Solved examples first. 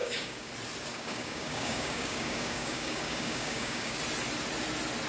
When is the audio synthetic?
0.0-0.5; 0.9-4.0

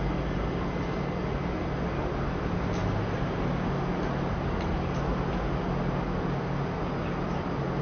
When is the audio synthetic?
none

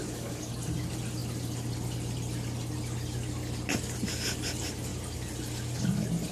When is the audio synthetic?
0.0-0.5